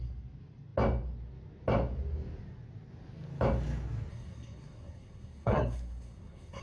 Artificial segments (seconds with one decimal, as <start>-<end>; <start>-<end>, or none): 4.1-6.6

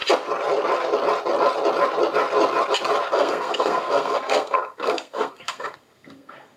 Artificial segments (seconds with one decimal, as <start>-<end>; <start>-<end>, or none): 3.1-6.6

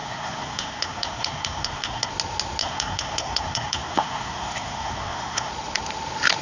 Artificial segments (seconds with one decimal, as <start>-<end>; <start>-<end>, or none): 0.0-2.1; 2.6-5.5

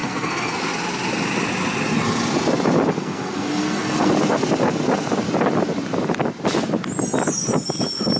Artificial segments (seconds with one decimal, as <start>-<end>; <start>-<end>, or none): 0.0-0.6; 3.0-4.1

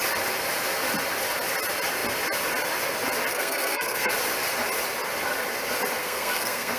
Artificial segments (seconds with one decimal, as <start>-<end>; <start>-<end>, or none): 3.3-4.1; 6.0-6.8

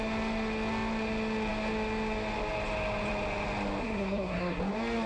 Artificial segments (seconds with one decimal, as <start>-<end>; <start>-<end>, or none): 3.8-4.6